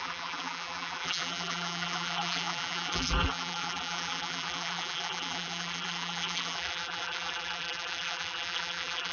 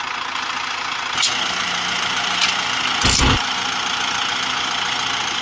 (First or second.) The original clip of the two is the second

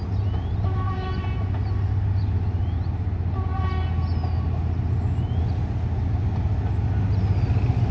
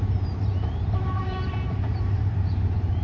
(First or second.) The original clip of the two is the first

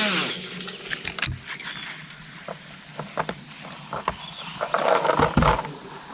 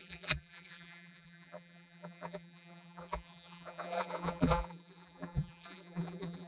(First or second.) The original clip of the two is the first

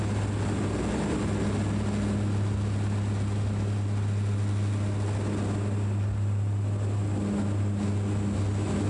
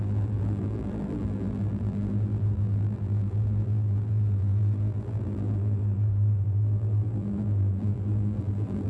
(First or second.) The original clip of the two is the first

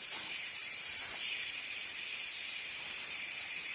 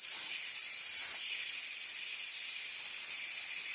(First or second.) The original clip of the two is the second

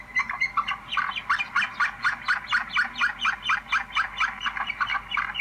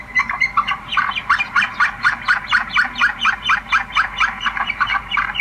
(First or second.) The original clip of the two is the first